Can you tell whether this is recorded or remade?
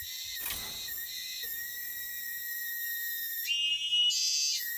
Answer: recorded